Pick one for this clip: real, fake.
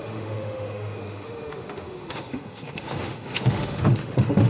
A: fake